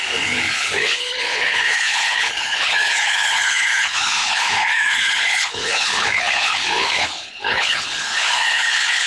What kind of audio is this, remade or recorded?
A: remade